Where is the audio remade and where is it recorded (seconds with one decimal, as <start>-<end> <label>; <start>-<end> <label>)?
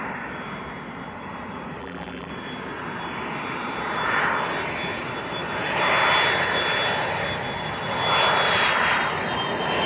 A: 0.0-1.8 recorded; 1.8-2.3 remade; 2.3-9.9 recorded